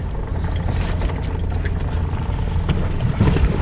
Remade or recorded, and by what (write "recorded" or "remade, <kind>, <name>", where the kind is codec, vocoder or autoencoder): recorded